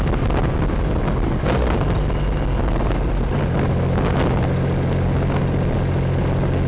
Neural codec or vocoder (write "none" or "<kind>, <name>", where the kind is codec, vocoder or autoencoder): none